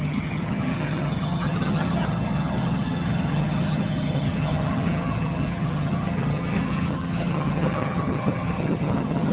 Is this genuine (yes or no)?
no